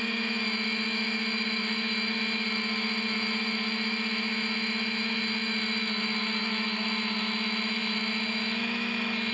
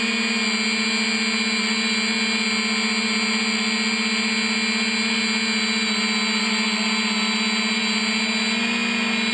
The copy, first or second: first